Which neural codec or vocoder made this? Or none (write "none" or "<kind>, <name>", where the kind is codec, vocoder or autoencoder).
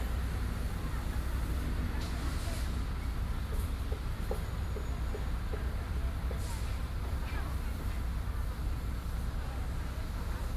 none